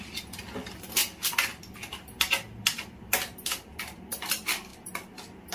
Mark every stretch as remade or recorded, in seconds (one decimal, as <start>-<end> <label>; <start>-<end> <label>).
0.0-5.5 recorded